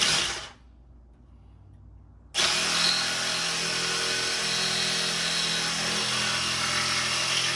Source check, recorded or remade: recorded